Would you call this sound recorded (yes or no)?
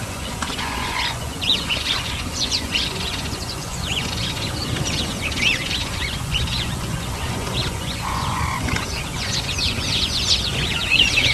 no